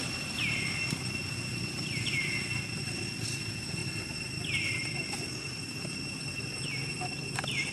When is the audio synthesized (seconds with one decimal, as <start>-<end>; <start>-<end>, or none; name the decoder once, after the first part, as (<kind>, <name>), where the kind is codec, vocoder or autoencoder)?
none